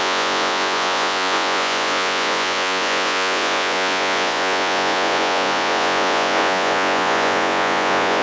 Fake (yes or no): yes